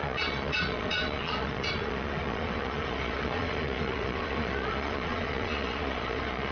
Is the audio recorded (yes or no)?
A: no